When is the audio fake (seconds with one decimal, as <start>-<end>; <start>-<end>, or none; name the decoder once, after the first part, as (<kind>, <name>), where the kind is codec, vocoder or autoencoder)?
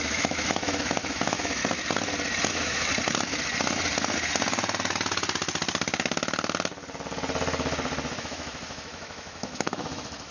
0.0-1.6 (autoencoder, DAC-VAE); 2.5-2.9; 8.2-10.3